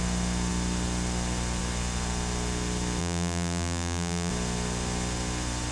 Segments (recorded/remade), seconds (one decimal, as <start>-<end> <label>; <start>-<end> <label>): 0.0-3.0 recorded; 3.0-4.3 remade; 4.3-5.7 recorded